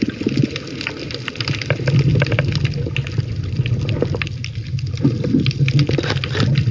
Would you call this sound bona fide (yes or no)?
yes